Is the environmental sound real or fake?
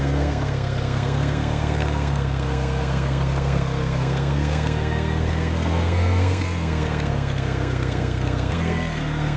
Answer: fake